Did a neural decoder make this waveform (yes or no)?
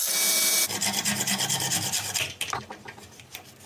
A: no